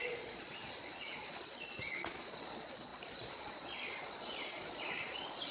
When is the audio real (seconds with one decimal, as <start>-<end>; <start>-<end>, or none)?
none